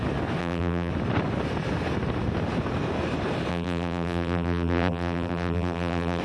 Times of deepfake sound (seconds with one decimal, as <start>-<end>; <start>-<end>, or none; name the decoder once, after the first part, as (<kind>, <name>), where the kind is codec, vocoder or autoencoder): 0.4-0.9 (vocoder, BigVGAN v2); 3.5-6.2